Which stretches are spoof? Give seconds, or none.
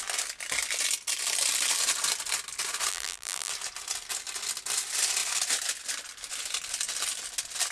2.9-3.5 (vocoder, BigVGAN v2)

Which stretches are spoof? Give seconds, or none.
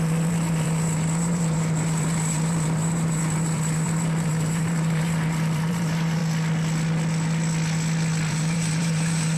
0.0-6.2 (vocoder, BigVGAN v2); 8.3-9.4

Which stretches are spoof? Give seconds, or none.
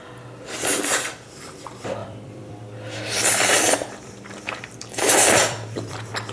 0.0-6.3 (vocoder, BigVGAN v2)